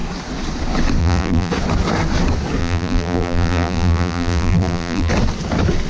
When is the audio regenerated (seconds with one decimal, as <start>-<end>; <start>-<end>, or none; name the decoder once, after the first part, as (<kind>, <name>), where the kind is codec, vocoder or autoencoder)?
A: 1.0-1.5 (vocoder, BigVGAN v2); 2.6-5.1